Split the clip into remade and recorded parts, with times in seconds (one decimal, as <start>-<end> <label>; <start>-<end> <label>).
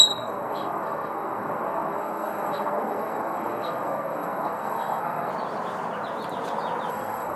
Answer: 0.0-5.3 remade; 5.3-6.9 recorded; 6.9-7.4 remade